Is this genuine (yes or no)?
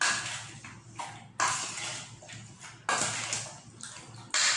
yes